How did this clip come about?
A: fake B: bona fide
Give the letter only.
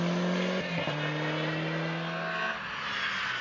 B